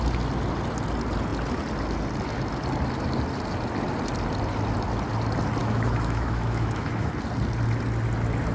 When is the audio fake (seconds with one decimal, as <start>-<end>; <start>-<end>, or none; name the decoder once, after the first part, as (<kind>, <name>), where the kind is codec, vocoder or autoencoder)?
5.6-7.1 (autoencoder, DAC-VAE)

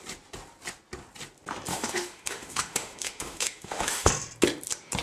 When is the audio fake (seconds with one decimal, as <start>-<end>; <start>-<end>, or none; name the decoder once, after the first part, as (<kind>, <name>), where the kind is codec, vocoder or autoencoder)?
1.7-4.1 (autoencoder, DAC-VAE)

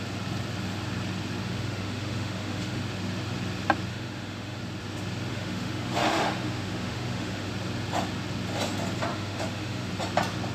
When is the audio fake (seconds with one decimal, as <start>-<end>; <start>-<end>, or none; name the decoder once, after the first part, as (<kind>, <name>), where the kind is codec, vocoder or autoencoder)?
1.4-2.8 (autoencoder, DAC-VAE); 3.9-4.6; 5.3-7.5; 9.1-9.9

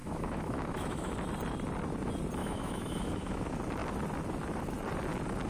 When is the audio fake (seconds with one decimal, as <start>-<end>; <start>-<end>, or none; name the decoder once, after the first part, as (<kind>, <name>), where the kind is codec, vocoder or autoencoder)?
0.0-1.1 (autoencoder, DAC-VAE); 2.4-3.4

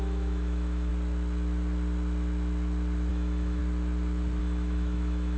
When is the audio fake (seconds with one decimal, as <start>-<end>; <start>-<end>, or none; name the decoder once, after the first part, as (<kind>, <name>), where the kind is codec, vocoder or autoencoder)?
0.0-0.9 (autoencoder, DAC-VAE); 3.1-3.6; 4.4-5.4

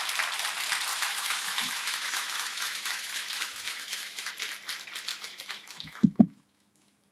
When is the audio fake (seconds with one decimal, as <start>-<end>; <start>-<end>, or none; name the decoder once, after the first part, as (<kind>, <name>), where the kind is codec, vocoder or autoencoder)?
0.9-4.3 (autoencoder, DAC-VAE); 5.1-7.1

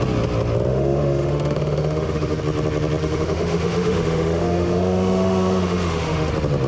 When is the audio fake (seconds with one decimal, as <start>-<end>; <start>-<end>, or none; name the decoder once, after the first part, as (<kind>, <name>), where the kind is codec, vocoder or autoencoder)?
0.7-2.4 (autoencoder, DAC-VAE); 3.0-6.3

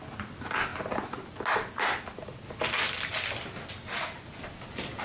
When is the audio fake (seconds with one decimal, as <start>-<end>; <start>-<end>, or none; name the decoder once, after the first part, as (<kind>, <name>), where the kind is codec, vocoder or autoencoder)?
none